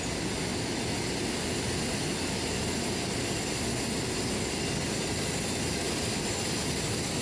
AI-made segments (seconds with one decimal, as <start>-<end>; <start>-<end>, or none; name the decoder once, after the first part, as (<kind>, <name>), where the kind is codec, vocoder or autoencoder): none